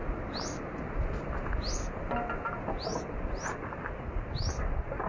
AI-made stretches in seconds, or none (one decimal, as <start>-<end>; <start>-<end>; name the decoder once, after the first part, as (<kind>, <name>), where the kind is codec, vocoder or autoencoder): none